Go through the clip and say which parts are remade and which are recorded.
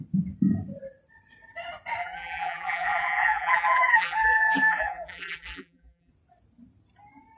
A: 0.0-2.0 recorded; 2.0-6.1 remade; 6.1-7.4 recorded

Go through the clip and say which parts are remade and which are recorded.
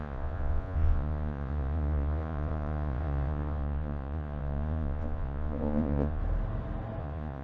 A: 0.0-6.2 remade; 6.2-7.0 recorded; 7.0-7.4 remade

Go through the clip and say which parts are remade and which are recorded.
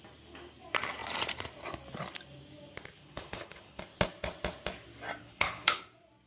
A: 0.0-3.0 recorded; 3.0-3.8 remade; 3.8-5.2 recorded; 5.2-5.8 remade; 5.8-6.3 recorded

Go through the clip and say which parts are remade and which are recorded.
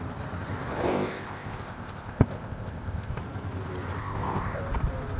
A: 0.0-0.9 recorded; 0.9-3.2 remade; 3.2-4.0 recorded; 4.0-4.6 remade; 4.6-5.2 recorded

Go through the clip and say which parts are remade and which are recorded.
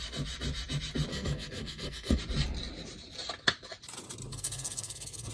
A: 0.0-1.1 recorded; 1.1-2.2 remade; 2.2-4.3 recorded; 4.3-5.3 remade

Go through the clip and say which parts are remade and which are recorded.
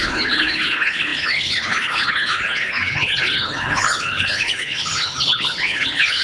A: 0.0-6.2 remade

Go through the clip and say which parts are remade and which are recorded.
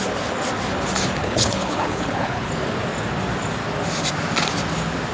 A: 0.0-1.2 recorded; 1.2-2.5 remade; 2.5-5.1 recorded